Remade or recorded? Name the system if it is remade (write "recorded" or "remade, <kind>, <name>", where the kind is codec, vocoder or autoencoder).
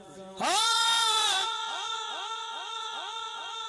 remade, vocoder, Vocos